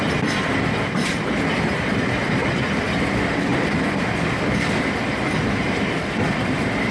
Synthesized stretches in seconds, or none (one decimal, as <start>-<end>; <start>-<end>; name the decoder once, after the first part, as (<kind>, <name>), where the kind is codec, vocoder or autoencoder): none